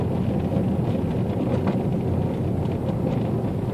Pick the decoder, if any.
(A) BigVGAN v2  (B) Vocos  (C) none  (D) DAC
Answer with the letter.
C